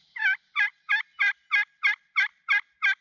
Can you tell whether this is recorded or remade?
recorded